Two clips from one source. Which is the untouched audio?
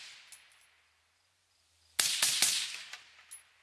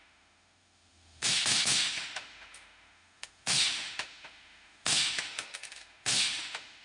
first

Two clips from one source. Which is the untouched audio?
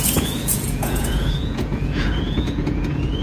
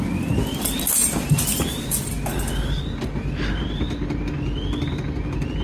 second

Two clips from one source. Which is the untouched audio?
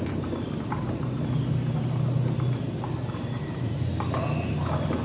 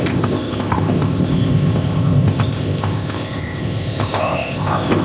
first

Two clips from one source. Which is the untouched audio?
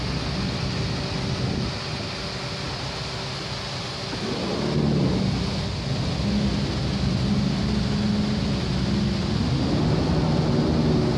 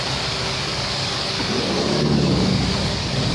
first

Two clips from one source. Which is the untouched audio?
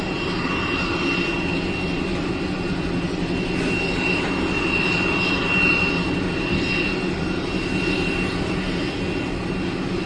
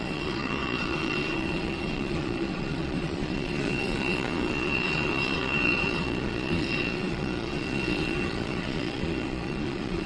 first